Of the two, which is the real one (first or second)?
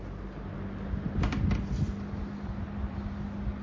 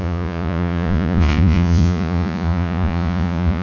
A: first